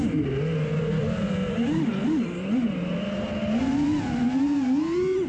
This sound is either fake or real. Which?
real